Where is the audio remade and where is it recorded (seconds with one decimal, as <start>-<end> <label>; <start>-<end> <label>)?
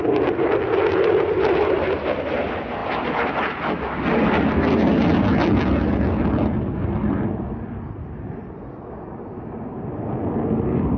0.0-11.0 recorded